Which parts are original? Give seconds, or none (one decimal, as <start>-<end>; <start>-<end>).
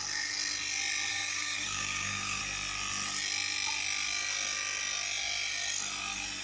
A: 0.0-1.1; 2.4-6.4